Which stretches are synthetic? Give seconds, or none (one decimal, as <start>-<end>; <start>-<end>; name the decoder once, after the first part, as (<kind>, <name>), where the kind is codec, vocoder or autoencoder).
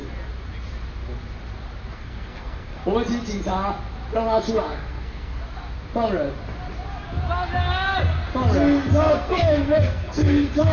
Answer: 1.9-2.8 (codec, SNAC); 4.5-5.4; 9.1-10.7